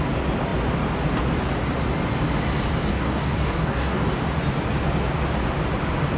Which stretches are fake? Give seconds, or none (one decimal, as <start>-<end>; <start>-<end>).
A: 2.9-4.1